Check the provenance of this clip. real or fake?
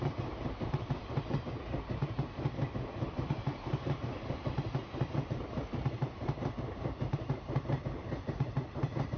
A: fake